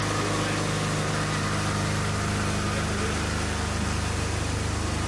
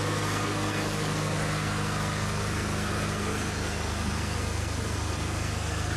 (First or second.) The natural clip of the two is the first